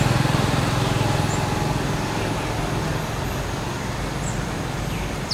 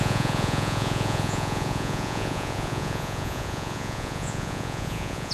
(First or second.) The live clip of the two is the first